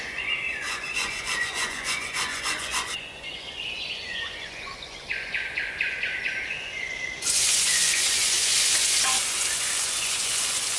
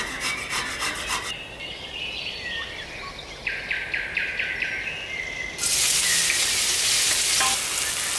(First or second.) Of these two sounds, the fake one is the first